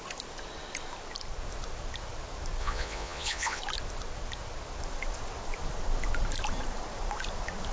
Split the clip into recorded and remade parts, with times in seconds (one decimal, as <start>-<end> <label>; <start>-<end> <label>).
0.0-2.6 recorded; 2.6-3.6 remade; 3.6-7.7 recorded